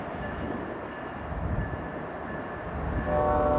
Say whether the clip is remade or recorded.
recorded